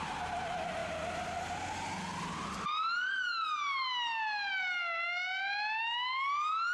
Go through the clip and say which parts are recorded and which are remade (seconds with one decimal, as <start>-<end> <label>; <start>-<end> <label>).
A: 0.0-6.7 recorded